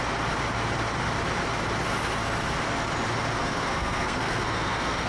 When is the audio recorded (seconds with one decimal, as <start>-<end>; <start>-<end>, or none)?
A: 0.0-3.4